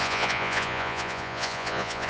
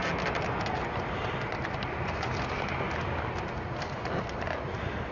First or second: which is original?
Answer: second